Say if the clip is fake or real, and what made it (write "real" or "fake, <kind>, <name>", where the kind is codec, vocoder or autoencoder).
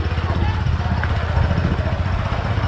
real